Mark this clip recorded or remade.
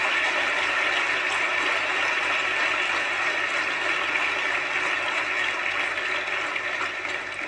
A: recorded